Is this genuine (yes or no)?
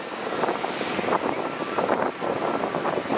yes